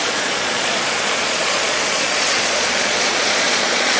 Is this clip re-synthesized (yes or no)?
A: yes